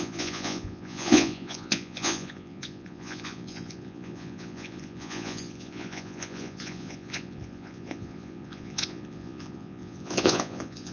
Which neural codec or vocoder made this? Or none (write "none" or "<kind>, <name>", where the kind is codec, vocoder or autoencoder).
vocoder, Vocos